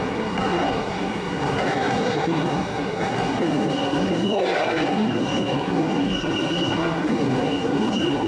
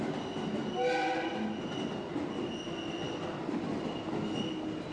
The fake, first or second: first